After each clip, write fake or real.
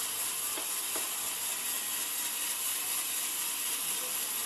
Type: fake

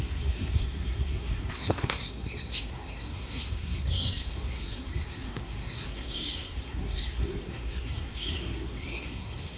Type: fake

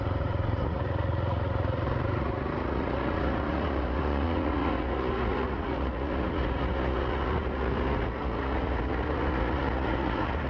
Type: fake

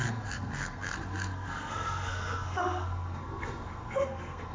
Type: fake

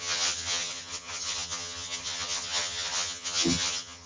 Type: fake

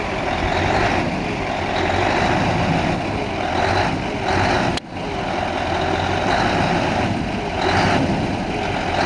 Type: real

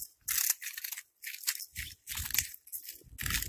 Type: real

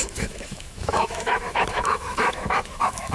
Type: fake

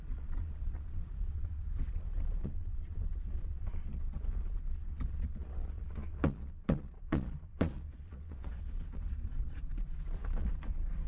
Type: fake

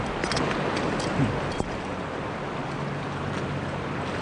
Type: real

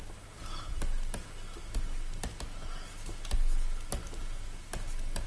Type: real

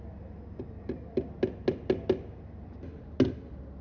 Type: real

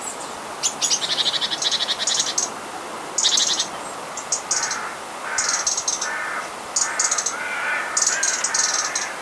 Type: real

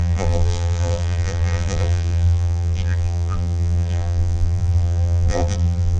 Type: fake